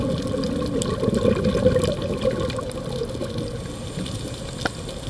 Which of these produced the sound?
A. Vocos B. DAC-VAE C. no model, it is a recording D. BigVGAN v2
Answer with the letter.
C